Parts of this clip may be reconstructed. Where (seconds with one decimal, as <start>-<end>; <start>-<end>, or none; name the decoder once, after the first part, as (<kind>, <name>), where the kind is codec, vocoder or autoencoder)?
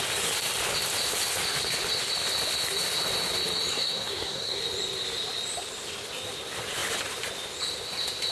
3.7-4.6 (codec, SNAC)